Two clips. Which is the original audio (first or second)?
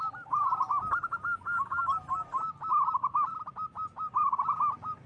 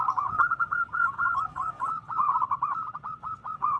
first